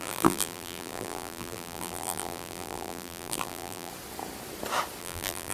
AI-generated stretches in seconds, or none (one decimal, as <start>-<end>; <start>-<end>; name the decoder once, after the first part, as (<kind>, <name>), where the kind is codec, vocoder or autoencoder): 0.0-3.9 (vocoder, BigVGAN v2); 5.0-5.5